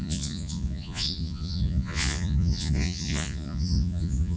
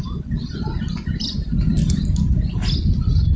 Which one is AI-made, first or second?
first